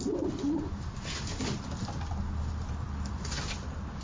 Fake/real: real